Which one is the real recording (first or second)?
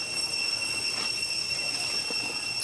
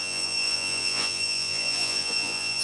first